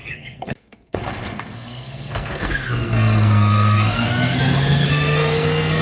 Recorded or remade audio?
remade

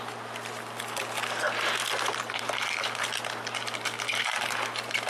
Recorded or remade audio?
recorded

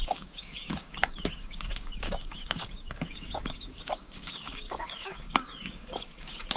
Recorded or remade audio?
remade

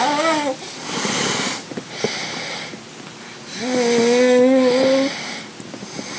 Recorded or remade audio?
recorded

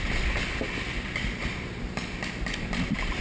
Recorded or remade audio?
recorded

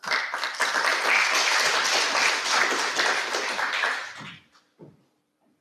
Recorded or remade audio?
remade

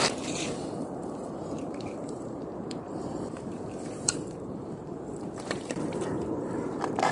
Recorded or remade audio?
remade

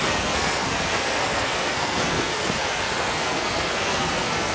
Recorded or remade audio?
remade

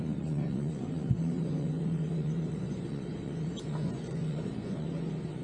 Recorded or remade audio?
remade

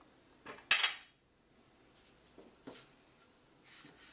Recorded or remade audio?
recorded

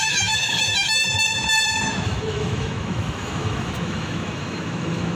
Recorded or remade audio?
remade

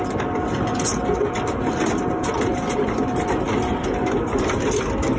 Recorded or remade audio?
recorded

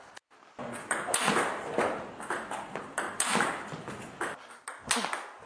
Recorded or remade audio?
recorded